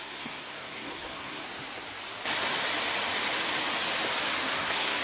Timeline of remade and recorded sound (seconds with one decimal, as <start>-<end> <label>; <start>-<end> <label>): 0.0-1.4 remade; 1.4-4.4 recorded; 4.4-5.0 remade